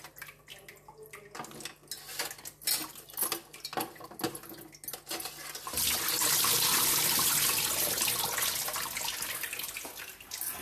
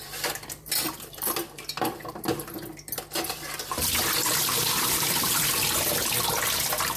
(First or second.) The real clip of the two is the first